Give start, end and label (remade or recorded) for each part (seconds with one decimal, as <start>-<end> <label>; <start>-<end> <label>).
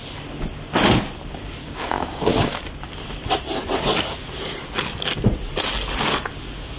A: 0.0-1.6 recorded; 1.6-2.6 remade; 2.6-6.8 recorded